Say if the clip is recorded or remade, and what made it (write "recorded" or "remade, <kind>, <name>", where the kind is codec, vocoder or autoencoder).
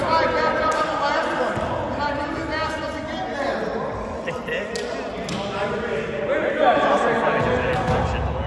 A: recorded